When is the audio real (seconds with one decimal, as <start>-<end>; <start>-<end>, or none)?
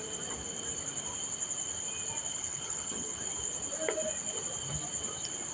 0.0-2.3; 3.2-5.5